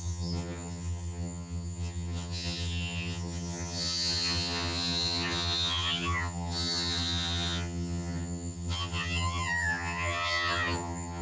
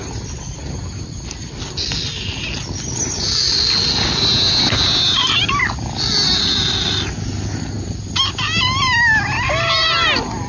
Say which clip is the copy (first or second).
first